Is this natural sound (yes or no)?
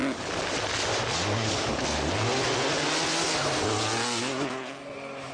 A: yes